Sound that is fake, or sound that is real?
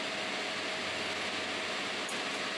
real